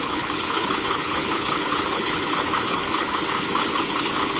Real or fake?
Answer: fake